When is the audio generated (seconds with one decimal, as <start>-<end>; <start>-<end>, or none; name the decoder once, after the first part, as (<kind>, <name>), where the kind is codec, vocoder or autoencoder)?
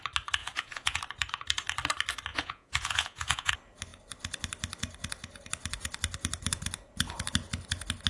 0.4-1.0 (vocoder, Vocos); 2.3-3.5